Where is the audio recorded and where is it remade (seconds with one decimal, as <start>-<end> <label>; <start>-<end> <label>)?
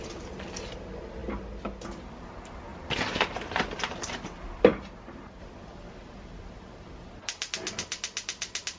0.0-8.8 recorded